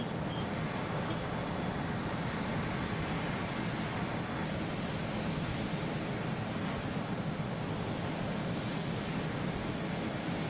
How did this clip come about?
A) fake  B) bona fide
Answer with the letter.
B